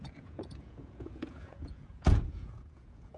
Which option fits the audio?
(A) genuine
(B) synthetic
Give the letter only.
B